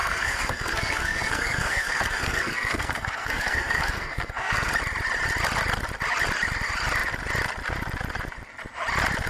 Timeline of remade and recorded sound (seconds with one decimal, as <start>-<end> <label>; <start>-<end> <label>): 0.0-4.7 remade; 4.7-9.3 recorded